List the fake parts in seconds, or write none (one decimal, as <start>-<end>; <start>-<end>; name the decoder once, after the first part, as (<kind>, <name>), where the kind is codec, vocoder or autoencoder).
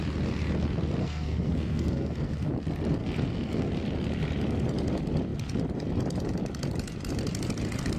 1.0-2.5 (codec, SNAC); 3.0-3.7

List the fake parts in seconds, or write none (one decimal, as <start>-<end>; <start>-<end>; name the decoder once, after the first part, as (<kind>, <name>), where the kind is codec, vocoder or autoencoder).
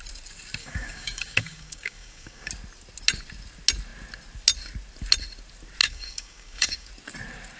0.6-2.5 (codec, DAC); 5.8-6.9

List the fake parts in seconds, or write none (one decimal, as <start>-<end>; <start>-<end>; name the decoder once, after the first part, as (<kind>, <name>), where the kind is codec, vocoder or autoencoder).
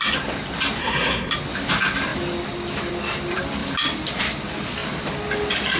0.8-1.3 (codec, SNAC)